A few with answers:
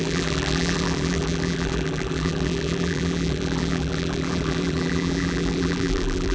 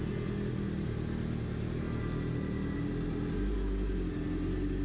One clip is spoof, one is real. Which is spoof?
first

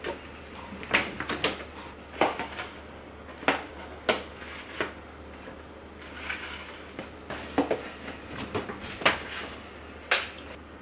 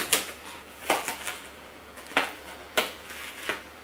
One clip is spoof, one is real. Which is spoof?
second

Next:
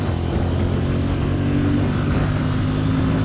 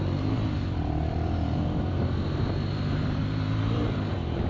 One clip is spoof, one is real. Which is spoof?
second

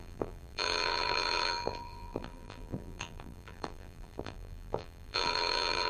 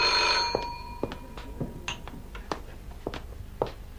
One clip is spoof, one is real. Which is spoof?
first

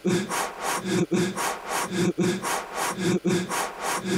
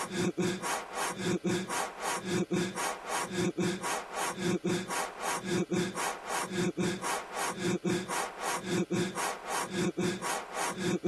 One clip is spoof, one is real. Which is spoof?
first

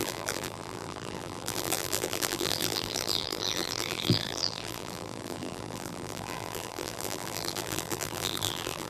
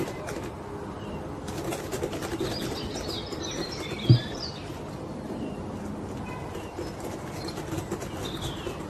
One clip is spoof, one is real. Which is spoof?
first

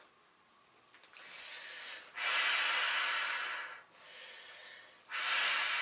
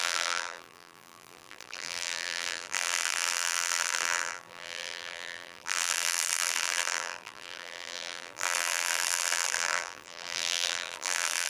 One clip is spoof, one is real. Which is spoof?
second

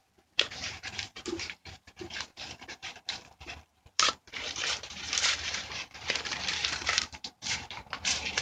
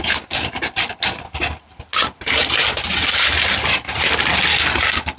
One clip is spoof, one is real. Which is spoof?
first